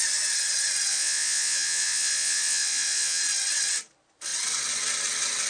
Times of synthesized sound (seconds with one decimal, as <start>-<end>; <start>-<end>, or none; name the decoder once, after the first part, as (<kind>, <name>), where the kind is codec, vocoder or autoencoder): 0.9-3.2 (vocoder, Vocos)